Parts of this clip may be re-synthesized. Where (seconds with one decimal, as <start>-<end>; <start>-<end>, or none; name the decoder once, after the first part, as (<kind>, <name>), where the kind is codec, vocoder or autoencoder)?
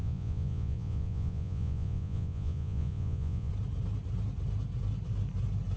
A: 0.0-3.5 (vocoder, Vocos)